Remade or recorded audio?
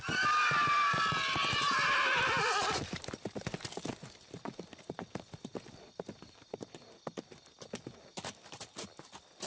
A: recorded